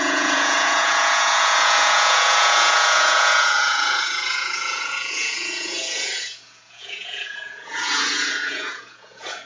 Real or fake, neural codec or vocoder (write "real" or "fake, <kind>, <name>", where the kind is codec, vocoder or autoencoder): fake, vocoder, Vocos